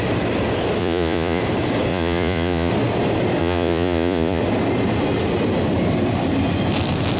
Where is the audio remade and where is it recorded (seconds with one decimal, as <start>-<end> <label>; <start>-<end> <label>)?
0.0-0.8 recorded; 0.8-1.4 remade; 1.4-1.9 recorded; 1.9-2.7 remade; 2.7-3.4 recorded; 3.4-4.4 remade; 4.4-7.2 recorded

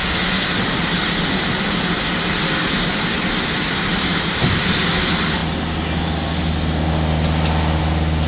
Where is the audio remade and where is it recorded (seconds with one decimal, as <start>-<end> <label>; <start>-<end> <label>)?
0.0-8.3 recorded

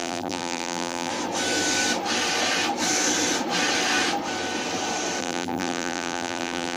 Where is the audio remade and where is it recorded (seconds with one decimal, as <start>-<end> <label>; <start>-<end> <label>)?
0.0-1.1 remade; 1.1-5.2 recorded; 5.2-6.8 remade

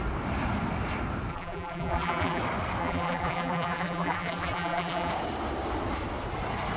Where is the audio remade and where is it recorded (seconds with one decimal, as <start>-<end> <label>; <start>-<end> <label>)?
0.0-1.3 recorded; 1.3-2.4 remade; 2.4-2.8 recorded; 2.8-5.1 remade; 5.1-6.8 recorded

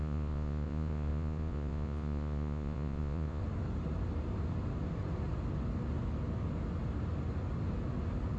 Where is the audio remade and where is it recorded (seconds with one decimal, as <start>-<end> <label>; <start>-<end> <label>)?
0.0-3.4 remade; 3.4-8.4 recorded

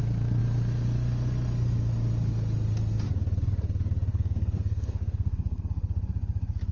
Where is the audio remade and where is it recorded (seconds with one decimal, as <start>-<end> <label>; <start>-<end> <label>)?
0.0-4.1 recorded; 4.1-5.7 remade; 5.7-6.7 recorded

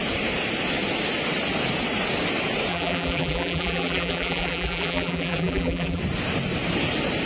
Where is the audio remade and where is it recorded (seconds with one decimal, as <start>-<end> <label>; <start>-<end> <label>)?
0.0-2.7 recorded; 2.7-6.0 remade; 6.0-7.3 recorded

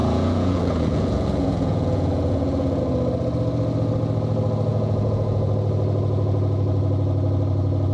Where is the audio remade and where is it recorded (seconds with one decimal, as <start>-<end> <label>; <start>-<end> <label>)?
0.0-2.8 remade; 2.8-4.7 recorded; 4.7-5.5 remade; 5.5-7.9 recorded